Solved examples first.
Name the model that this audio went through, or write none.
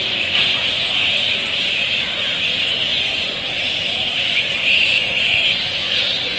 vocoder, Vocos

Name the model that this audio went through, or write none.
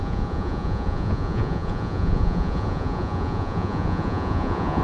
vocoder, Vocos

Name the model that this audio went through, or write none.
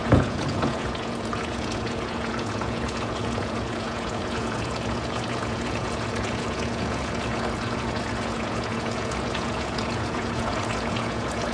vocoder, Vocos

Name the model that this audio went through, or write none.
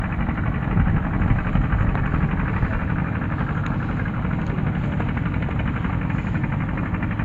none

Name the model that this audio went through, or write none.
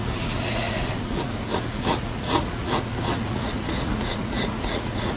vocoder, Vocos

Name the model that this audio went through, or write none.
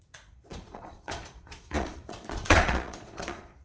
vocoder, Vocos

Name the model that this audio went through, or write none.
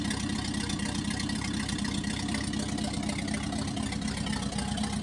none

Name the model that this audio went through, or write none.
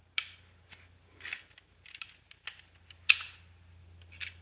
none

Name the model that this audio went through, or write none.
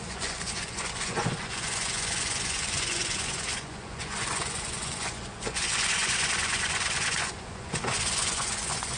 vocoder, Vocos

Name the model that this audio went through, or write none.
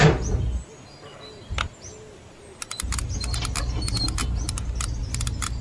none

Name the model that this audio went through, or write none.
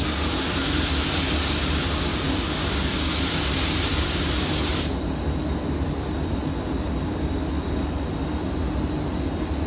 none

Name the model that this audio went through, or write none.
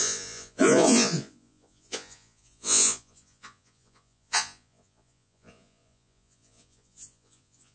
vocoder, Vocos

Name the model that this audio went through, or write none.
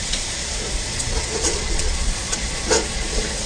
vocoder, Vocos